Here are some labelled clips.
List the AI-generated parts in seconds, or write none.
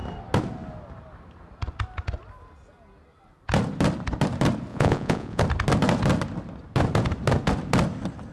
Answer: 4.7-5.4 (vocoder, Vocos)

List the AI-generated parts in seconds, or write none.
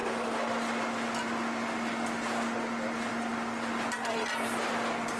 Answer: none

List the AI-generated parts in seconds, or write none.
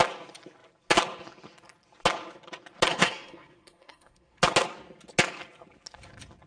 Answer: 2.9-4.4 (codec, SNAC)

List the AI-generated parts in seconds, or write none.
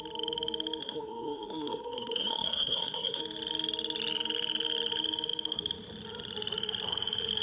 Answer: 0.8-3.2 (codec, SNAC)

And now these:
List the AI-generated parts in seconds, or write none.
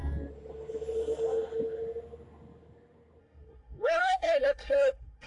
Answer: 3.2-5.3 (codec, SNAC)